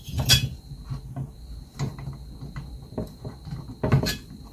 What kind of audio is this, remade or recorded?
recorded